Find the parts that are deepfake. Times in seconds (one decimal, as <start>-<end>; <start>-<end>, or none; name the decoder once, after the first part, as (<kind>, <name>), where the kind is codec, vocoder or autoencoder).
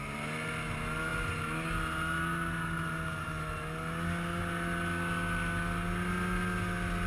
none